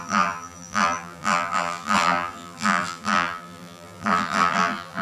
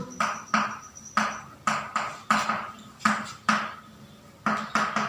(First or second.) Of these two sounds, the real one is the second